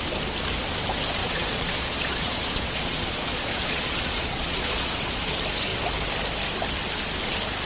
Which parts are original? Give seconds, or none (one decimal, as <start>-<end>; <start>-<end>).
0.0-1.2; 5.3-7.7